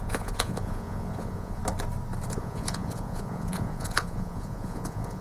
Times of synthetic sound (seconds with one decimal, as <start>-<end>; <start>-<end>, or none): 0.0-1.6; 2.3-5.2